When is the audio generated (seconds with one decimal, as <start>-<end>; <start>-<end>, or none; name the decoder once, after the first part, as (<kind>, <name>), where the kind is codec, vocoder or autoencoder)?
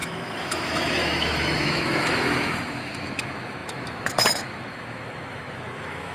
0.0-6.1 (autoencoder, DAC-VAE)